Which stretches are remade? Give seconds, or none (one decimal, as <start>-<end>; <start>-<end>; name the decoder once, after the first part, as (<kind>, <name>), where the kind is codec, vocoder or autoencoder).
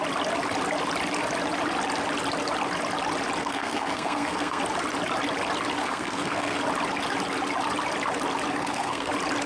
3.4-4.6 (codec, SNAC); 5.8-6.6; 8.6-9.1